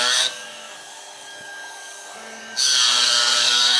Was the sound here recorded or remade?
remade